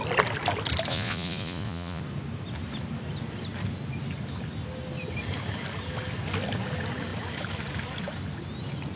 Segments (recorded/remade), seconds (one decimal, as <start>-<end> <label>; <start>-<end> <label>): 0.0-0.9 recorded; 0.9-2.0 remade; 2.0-9.0 recorded